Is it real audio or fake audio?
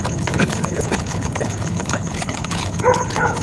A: fake